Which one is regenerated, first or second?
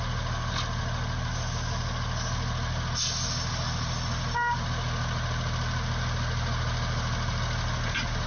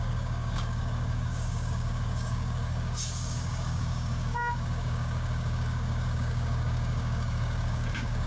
second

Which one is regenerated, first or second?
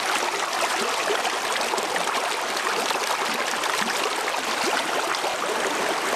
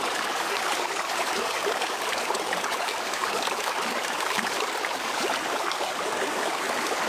second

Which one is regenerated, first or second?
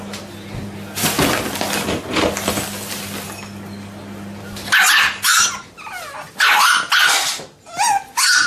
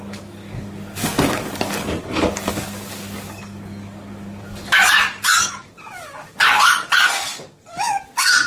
second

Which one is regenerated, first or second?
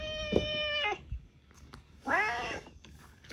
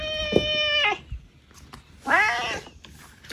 first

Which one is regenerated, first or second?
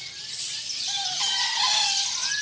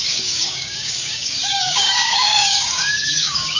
second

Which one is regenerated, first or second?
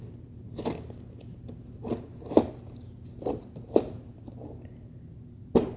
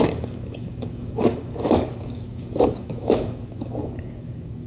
second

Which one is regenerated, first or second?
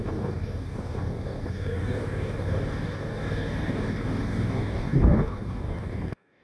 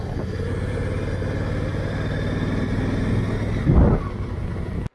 first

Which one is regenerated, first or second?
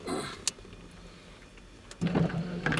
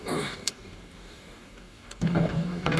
second